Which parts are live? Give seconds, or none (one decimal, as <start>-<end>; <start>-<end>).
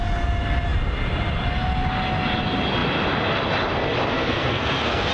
0.0-4.1